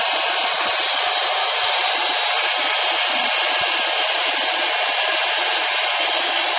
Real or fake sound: real